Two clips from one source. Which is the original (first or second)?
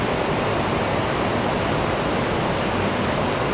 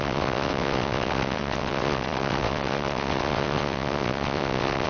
first